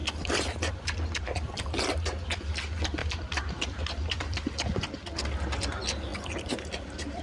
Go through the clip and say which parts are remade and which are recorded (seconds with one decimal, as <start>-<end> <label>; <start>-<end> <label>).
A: 0.0-1.9 remade; 1.9-3.0 recorded; 3.0-4.5 remade; 4.5-7.2 recorded